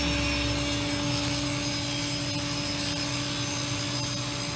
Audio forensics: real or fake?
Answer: real